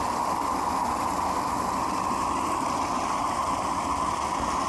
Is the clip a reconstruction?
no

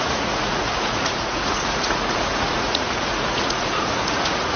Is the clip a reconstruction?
yes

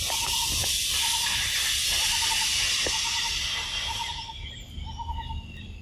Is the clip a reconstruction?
no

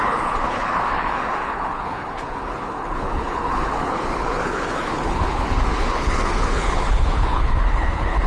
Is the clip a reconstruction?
yes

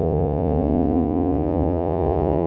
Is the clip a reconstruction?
yes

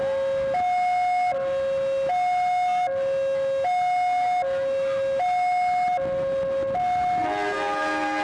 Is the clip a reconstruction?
no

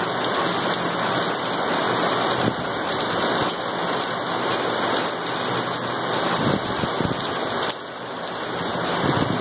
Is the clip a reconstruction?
no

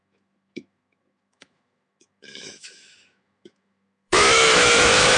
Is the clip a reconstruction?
yes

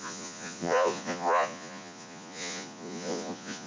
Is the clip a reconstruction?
yes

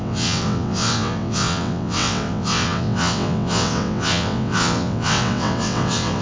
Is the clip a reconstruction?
yes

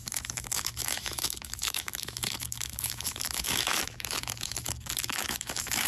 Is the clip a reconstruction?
yes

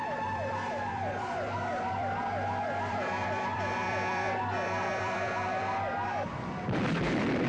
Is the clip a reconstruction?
yes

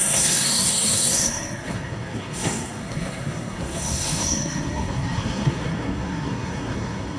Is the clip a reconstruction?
yes